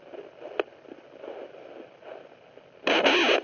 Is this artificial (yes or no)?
no